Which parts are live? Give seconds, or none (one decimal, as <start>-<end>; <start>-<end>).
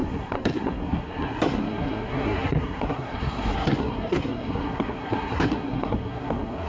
none